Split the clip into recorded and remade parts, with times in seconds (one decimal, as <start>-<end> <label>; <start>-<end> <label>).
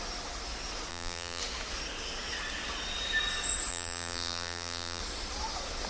0.0-0.9 recorded; 0.9-1.4 remade; 1.4-3.7 recorded; 3.7-5.0 remade; 5.0-5.9 recorded